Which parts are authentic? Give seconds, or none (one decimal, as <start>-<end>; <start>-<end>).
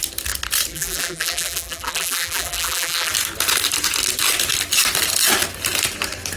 0.0-0.7; 3.1-6.4